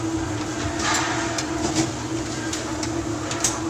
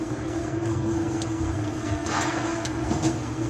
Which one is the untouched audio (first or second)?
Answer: first